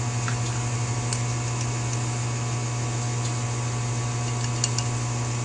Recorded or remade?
recorded